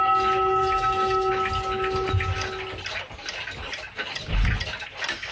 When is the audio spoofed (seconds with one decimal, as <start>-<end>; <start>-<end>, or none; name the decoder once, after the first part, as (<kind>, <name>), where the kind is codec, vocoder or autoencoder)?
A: 0.6-1.3 (autoencoder, DAC-VAE)